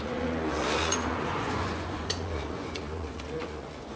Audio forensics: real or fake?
fake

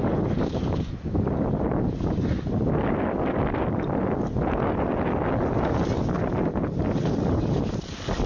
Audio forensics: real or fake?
real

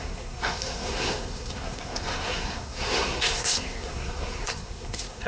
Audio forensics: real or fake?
fake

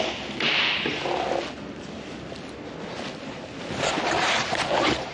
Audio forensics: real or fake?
real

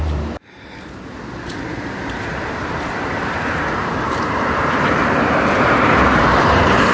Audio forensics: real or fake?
fake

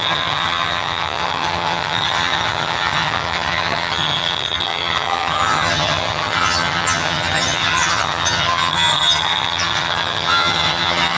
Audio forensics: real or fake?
fake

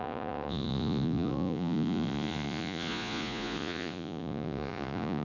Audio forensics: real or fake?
fake